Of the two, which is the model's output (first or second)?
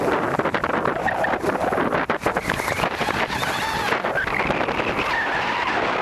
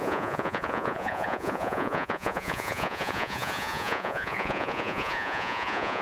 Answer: second